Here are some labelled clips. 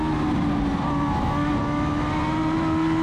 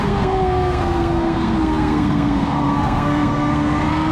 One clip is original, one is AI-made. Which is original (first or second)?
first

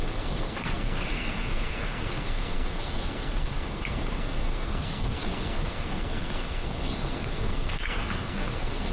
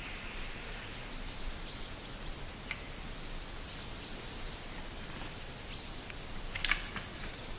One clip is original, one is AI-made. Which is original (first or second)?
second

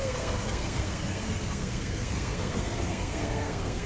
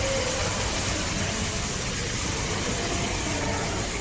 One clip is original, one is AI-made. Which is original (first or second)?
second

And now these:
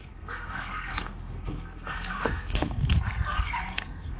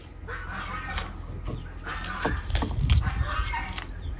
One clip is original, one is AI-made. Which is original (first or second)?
second